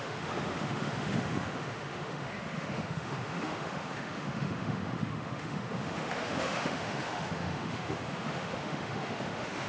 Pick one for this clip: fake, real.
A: fake